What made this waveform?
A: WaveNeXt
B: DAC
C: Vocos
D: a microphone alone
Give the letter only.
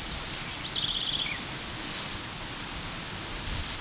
D